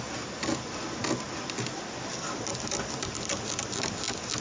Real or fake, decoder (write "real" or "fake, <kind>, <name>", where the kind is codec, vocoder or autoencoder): real